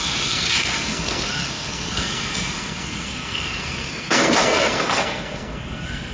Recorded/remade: remade